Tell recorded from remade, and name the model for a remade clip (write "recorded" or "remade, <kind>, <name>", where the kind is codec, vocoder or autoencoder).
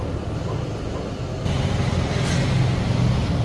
recorded